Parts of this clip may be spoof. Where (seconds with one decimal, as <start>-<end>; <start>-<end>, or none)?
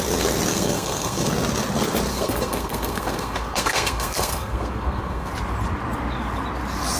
0.5-1.3; 2.1-5.3